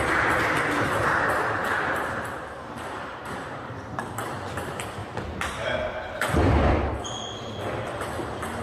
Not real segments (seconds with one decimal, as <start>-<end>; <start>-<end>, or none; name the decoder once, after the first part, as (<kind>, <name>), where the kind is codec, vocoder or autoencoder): 1.6-4.1 (vocoder, BigVGAN v2)